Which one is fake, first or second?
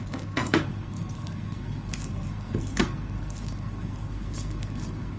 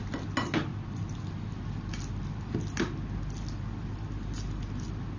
first